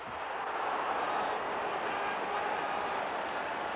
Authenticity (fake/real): real